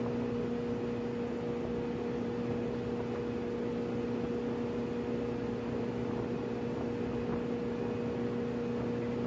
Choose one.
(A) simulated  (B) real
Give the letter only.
B